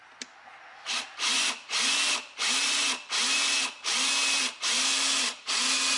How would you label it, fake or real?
real